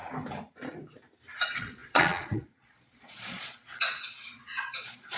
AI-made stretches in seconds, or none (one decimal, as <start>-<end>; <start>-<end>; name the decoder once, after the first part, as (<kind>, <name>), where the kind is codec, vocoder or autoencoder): 1.4-5.2 (vocoder, Vocos)